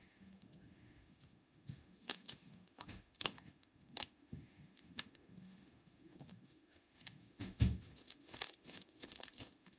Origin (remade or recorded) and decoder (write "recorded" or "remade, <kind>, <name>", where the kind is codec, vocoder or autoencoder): remade, autoencoder, DAC-VAE